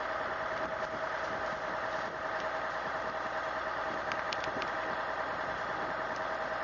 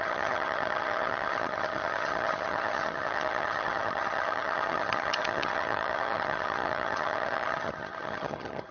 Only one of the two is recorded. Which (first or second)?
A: first